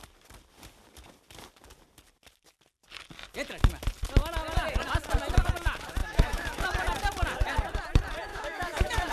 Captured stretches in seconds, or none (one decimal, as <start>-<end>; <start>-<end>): 0.0-6.0; 6.6-8.3